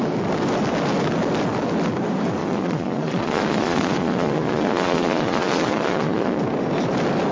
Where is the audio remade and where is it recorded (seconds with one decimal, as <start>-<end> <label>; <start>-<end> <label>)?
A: 0.0-2.4 recorded; 2.4-6.4 remade; 6.4-7.3 recorded